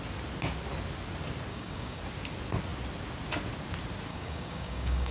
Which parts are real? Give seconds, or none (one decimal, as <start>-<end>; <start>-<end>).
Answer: 0.0-1.5; 2.0-4.1